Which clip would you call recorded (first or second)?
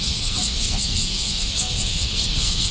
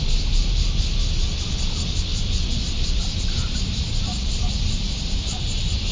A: second